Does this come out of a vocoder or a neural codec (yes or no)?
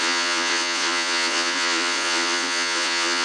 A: yes